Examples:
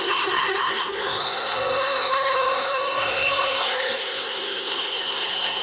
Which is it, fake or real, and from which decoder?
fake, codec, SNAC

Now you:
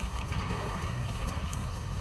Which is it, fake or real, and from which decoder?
fake, codec, SNAC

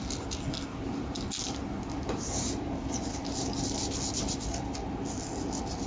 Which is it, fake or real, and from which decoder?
real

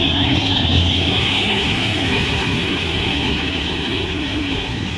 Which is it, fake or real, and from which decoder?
fake, codec, SNAC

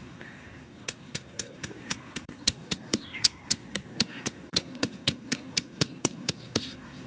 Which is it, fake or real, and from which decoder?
fake, codec, SNAC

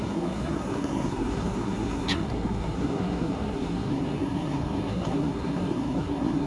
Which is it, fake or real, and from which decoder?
fake, codec, SNAC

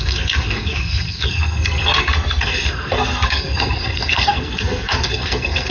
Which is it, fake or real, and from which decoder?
fake, codec, SNAC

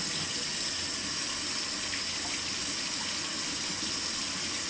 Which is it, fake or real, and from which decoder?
real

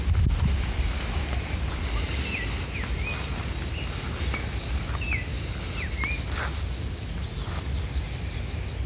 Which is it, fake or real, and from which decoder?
real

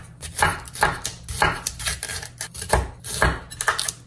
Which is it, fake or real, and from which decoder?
real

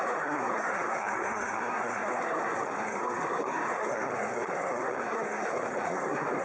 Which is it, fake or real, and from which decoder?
fake, codec, SNAC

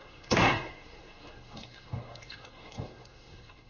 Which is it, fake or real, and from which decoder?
fake, codec, SNAC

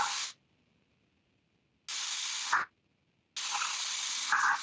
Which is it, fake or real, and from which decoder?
real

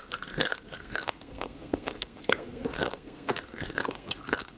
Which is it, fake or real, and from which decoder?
fake, codec, SNAC